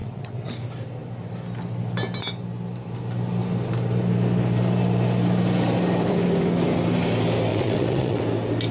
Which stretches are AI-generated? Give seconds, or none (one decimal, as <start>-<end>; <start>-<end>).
0.0-0.5; 7.5-8.2